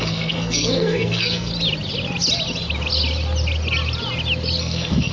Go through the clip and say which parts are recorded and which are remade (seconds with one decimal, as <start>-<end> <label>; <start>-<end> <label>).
0.0-1.5 remade; 1.5-4.6 recorded; 4.6-5.1 remade